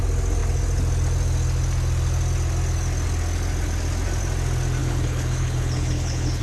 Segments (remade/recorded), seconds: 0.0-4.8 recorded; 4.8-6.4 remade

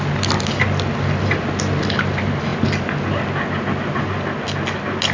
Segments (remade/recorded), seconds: 0.0-5.1 recorded